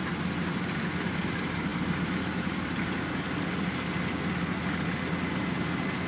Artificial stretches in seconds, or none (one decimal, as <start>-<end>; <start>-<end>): none